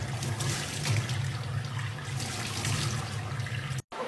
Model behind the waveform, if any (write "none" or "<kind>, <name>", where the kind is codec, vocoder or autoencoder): none